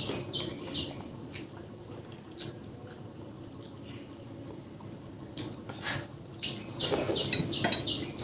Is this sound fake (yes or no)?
no